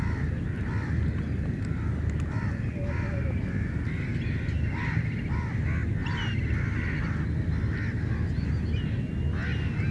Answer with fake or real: real